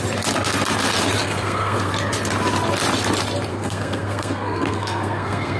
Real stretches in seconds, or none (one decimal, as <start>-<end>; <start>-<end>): 0.0-1.2; 1.9-3.5